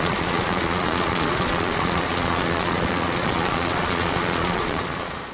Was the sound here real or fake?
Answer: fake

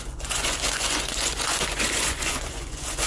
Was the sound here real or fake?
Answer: fake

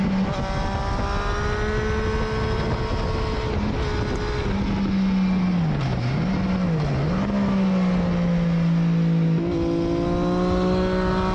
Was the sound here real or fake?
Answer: real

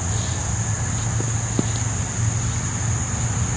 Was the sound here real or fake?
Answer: real